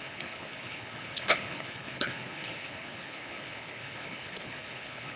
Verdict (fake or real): fake